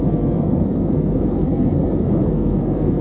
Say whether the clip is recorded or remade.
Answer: remade